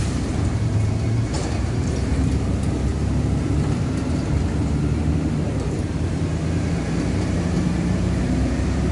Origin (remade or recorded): remade